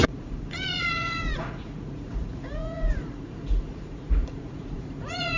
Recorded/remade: remade